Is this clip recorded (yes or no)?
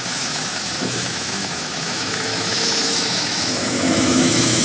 no